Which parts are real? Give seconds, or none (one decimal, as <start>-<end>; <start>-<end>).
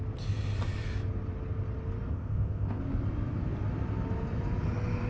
0.0-2.1; 2.8-5.1